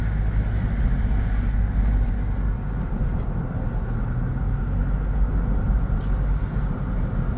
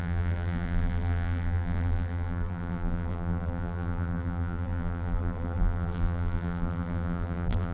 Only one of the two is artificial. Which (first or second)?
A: second